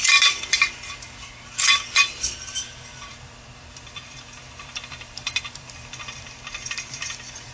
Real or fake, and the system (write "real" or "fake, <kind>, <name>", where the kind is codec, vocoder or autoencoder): fake, vocoder, BigVGAN v2